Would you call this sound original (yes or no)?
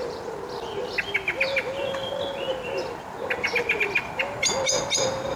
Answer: yes